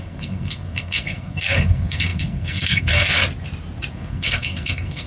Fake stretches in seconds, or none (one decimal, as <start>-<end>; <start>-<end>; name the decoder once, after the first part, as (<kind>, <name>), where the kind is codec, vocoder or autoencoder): 0.0-3.2 (codec, SNAC); 3.9-5.1